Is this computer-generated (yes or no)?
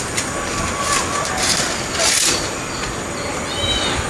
no